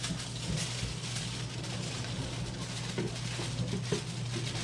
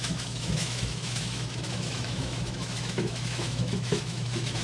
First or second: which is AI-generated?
second